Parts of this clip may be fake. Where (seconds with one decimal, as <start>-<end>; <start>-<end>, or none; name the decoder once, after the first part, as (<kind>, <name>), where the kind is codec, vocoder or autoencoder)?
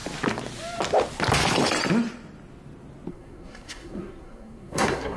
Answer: 3.1-5.2 (codec, SNAC)